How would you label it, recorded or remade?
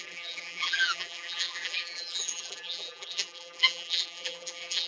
remade